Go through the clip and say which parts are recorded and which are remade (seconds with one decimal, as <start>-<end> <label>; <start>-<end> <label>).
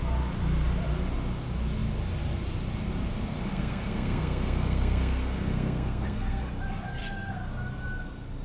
0.0-3.5 recorded; 3.5-6.4 remade; 6.4-7.0 recorded; 7.0-7.5 remade; 7.5-8.4 recorded